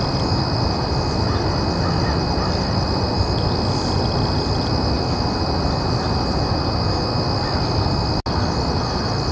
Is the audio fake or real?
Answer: real